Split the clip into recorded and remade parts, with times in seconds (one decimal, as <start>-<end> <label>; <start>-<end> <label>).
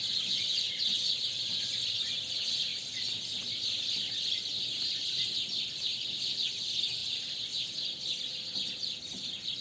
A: 0.0-9.6 recorded